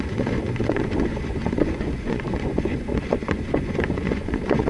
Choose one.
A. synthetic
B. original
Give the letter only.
A